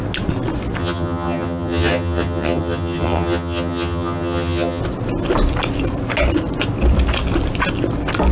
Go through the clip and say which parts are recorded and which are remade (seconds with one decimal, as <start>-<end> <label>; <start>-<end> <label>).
0.0-0.8 recorded; 0.8-4.8 remade; 4.8-8.3 recorded